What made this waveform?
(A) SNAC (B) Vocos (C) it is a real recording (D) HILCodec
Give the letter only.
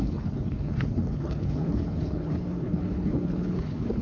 D